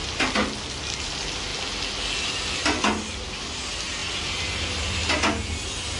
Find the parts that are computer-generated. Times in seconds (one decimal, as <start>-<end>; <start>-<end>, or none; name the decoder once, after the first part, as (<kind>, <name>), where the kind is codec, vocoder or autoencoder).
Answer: none